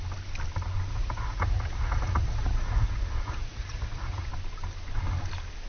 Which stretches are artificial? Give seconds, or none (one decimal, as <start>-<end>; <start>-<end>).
0.9-4.3